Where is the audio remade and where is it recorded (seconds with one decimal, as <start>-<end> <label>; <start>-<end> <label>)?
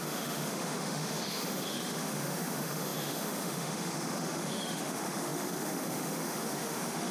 0.0-7.1 remade